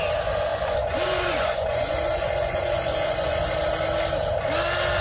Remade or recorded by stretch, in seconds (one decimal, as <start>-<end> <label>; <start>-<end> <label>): 0.0-0.5 recorded; 0.5-3.5 remade; 3.5-5.0 recorded